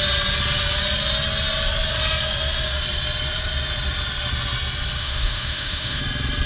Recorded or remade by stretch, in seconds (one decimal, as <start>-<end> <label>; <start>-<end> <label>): 0.0-5.0 recorded; 5.0-6.0 remade; 6.0-6.5 recorded